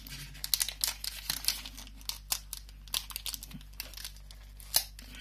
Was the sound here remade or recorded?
recorded